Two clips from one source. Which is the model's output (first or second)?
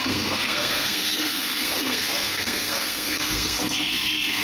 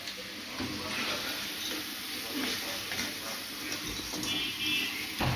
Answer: first